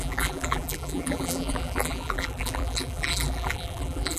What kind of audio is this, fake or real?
fake